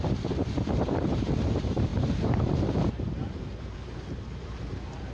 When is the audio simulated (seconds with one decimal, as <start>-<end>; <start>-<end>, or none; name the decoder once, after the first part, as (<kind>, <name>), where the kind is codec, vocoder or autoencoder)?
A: 0.0-5.1 (vocoder, BigVGAN v2)